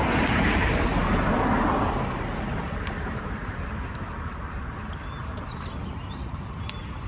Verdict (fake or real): fake